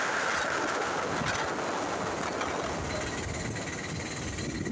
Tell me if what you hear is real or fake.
real